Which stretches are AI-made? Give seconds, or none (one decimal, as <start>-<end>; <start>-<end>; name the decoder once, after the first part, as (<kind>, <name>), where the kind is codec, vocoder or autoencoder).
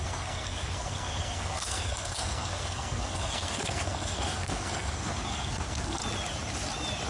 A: 0.0-6.0 (codec, SNAC)